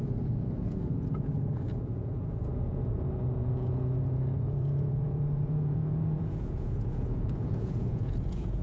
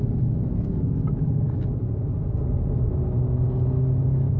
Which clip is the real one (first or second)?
second